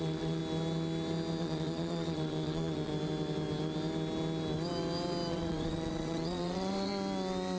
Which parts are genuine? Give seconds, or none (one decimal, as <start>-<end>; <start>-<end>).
0.4-1.4; 2.9-5.3; 6.9-7.6